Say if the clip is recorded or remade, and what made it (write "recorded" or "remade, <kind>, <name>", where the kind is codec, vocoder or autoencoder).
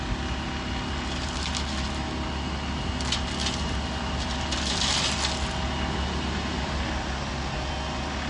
recorded